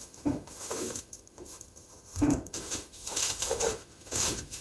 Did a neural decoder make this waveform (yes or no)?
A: yes